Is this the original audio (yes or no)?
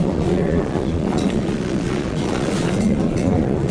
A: no